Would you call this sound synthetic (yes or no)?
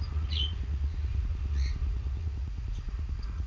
yes